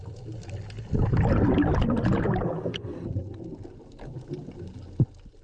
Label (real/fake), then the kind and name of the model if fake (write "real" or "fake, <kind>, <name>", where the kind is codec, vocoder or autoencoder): real